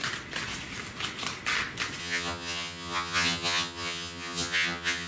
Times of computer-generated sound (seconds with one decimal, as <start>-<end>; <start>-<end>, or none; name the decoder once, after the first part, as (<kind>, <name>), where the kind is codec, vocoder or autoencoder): 2.0-5.1 (vocoder, HiFi-GAN)